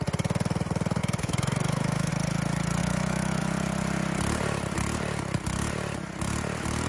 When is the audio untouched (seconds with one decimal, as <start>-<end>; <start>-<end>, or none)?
0.0-1.0; 2.1-2.8; 3.4-6.9